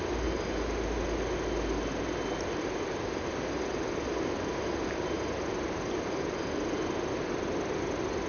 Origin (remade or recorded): recorded